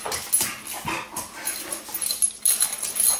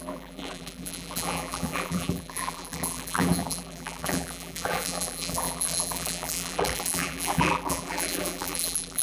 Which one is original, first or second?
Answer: first